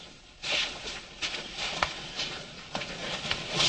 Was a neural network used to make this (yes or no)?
yes